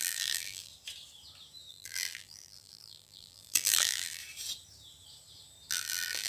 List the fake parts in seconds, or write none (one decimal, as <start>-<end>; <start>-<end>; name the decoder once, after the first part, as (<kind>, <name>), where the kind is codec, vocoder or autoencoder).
0.0-0.7 (vocoder, BigVGAN v2); 1.7-4.2; 5.7-6.3